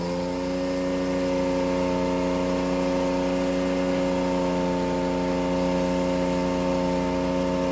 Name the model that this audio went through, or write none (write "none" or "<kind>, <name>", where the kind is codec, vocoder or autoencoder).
none